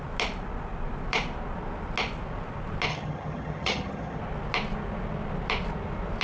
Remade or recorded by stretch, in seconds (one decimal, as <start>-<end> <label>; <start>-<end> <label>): 0.0-2.9 recorded; 2.9-4.2 remade; 4.2-6.2 recorded